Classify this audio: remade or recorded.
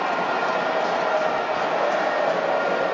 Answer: recorded